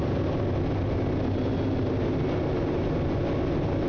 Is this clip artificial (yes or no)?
no